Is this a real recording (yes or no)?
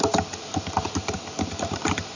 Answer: no